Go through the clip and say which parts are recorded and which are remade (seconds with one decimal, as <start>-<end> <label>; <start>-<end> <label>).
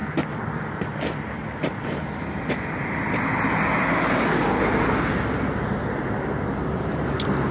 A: 0.0-7.5 recorded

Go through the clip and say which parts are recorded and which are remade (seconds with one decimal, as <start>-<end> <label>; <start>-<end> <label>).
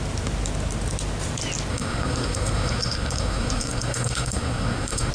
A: 0.0-1.7 recorded; 1.7-5.1 remade